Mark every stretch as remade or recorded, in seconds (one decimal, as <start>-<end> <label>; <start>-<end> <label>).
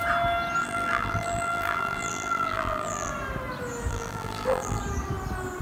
0.0-0.6 recorded; 0.6-3.1 remade; 3.1-3.9 recorded; 3.9-4.8 remade; 4.8-5.6 recorded